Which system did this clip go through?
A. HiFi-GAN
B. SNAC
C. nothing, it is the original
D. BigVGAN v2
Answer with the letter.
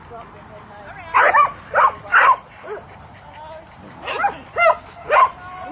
C